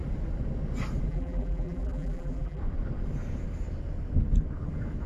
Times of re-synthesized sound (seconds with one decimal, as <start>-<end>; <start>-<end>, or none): 1.1-2.6